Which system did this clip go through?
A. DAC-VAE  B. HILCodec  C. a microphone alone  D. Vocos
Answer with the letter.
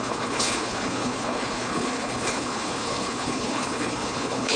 B